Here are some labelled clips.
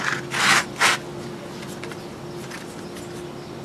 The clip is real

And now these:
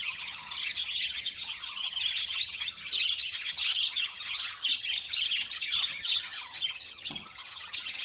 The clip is fake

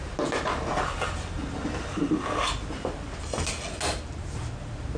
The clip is real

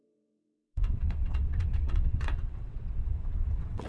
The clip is fake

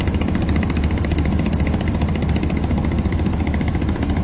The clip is fake